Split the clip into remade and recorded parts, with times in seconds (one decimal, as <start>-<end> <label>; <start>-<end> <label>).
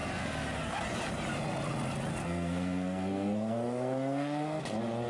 0.0-2.2 recorded; 2.2-4.6 remade; 4.6-5.1 recorded